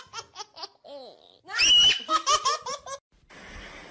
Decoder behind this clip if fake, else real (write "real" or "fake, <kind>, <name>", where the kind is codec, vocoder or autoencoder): real